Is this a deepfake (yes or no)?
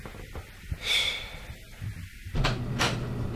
no